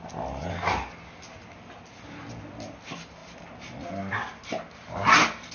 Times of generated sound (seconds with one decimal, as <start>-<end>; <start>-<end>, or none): none